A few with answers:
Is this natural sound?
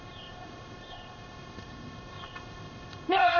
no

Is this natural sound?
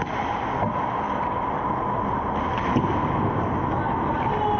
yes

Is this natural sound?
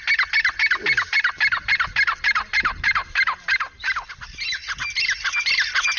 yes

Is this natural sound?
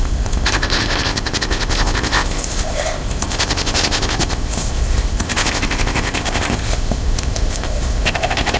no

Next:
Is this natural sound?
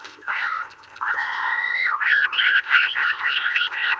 no